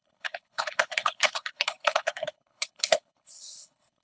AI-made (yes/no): yes